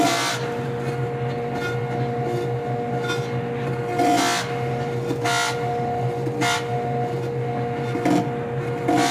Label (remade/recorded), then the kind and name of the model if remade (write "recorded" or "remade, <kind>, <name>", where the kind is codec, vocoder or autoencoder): recorded